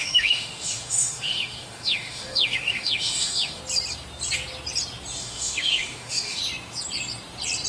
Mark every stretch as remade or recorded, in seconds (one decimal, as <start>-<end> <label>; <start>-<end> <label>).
0.0-3.6 remade; 3.6-5.2 recorded; 5.2-6.4 remade; 6.4-7.7 recorded